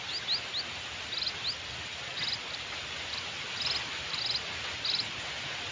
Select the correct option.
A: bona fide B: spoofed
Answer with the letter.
A